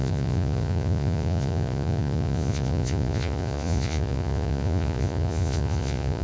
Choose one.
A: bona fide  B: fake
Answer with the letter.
B